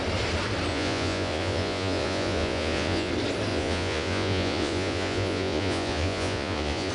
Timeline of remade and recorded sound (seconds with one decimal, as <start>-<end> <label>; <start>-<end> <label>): 0.0-0.7 recorded; 0.7-3.1 remade; 3.1-3.5 recorded; 3.5-6.9 remade